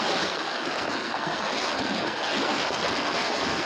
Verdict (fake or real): fake